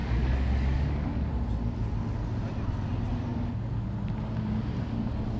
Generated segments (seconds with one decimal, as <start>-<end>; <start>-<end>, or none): 0.0-1.3; 3.3-3.9